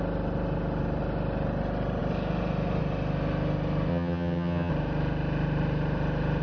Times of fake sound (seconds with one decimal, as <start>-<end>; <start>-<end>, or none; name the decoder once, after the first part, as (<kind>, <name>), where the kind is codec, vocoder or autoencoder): 3.9-4.7 (vocoder, HiFi-GAN)